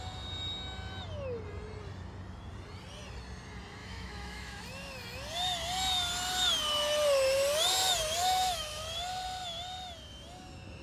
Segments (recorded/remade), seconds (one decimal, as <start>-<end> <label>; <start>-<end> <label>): 0.0-3.8 recorded; 3.8-4.6 remade; 4.6-8.2 recorded; 8.2-8.8 remade; 8.8-10.8 recorded